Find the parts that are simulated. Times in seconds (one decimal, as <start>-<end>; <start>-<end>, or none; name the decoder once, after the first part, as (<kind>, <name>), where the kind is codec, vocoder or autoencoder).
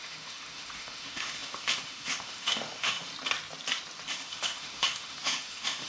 0.0-3.1 (autoencoder, DAC-VAE); 4.1-5.9